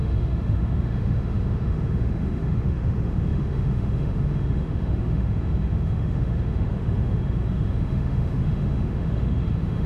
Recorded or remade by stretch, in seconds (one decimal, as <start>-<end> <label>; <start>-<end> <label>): 0.0-9.9 remade